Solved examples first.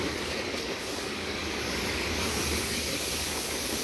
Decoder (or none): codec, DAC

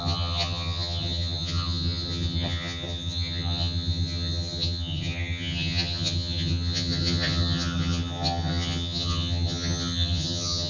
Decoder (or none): vocoder, HiFi-GAN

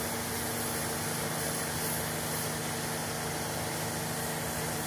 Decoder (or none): none